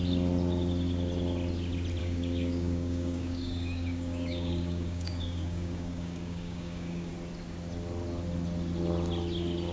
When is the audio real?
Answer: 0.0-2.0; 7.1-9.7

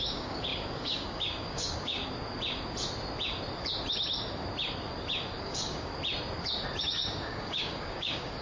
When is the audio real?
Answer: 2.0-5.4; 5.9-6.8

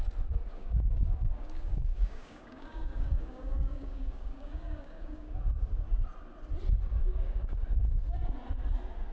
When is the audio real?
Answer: 0.0-0.5; 5.4-7.0; 7.5-9.1